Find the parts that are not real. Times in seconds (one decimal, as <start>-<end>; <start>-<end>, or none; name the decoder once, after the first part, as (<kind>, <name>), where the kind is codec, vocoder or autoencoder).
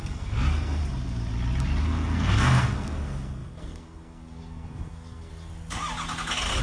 0.0-0.8 (codec, SNAC); 1.8-5.3